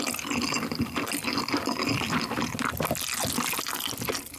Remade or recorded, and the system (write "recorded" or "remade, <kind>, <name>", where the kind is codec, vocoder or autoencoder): recorded